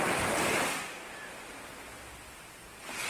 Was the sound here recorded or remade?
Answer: recorded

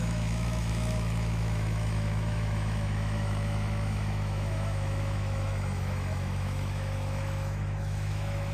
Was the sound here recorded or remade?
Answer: remade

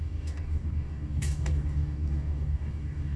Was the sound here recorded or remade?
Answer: remade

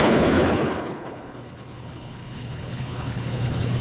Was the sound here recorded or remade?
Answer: remade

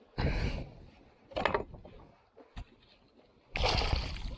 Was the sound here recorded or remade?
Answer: recorded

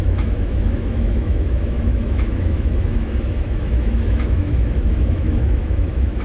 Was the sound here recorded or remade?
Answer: remade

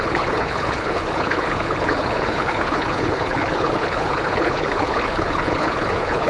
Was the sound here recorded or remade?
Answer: remade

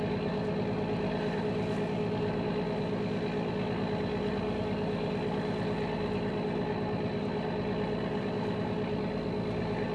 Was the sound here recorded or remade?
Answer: recorded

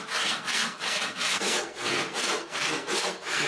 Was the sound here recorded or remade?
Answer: remade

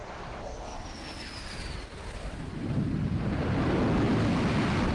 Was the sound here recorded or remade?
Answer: recorded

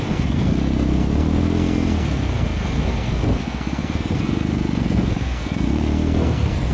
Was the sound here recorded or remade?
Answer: remade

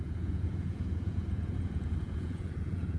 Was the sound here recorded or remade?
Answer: remade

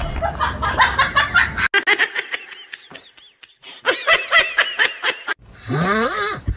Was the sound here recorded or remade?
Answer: recorded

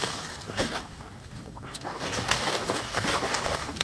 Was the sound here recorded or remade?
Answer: remade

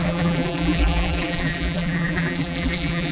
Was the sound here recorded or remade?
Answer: remade